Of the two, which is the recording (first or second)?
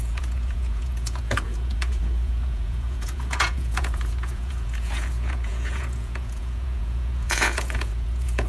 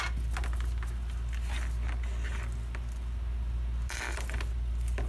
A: second